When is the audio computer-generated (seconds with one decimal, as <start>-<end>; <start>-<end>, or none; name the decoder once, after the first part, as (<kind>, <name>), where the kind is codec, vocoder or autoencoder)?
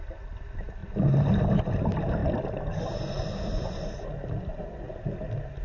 none